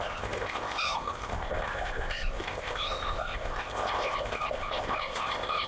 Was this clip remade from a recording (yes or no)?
yes